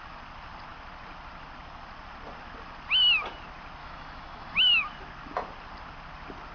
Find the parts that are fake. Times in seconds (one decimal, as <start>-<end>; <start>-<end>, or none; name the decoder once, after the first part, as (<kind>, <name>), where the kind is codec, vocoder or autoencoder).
3.8-4.7 (autoencoder, DAC-VAE)